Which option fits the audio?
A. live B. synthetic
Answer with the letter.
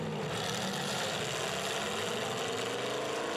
A